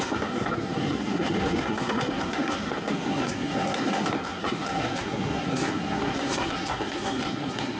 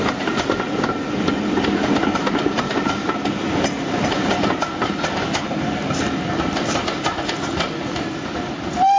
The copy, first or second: first